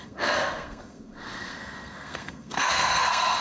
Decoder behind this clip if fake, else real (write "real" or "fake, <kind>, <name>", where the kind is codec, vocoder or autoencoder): fake, codec, SNAC